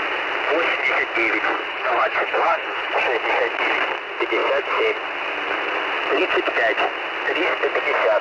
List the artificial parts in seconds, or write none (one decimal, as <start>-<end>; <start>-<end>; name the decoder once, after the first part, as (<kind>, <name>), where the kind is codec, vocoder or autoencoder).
1.7-2.9 (codec, HILCodec)